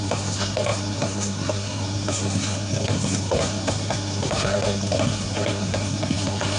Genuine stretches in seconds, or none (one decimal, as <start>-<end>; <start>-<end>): none

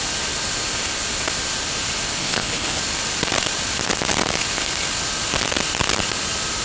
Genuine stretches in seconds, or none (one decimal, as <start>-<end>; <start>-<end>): 0.0-2.2; 2.8-6.6

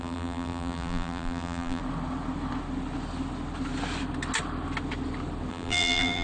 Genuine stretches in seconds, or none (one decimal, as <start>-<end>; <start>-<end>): 1.8-5.5

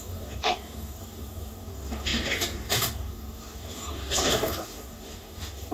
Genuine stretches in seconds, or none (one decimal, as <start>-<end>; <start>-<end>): none

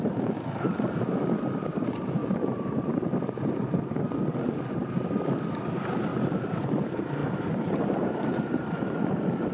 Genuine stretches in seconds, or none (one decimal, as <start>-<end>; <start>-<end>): 2.2-5.5

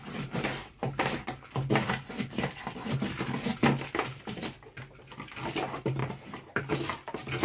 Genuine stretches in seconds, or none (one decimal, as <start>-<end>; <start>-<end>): 1.1-6.0; 6.6-7.4

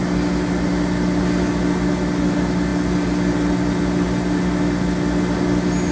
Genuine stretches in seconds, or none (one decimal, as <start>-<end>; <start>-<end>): 0.0-5.9